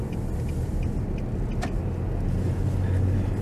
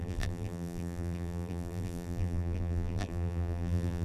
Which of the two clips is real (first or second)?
first